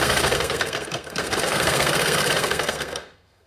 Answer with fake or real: fake